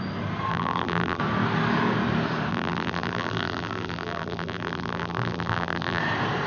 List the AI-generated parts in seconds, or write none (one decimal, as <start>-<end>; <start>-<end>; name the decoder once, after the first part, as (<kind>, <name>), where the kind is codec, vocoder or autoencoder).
0.5-1.2 (vocoder, BigVGAN v2); 2.5-6.0